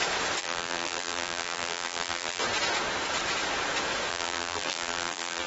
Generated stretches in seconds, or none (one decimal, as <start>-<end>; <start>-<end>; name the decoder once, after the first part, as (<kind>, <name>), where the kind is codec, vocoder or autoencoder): 0.4-2.4 (vocoder, BigVGAN v2); 4.1-5.5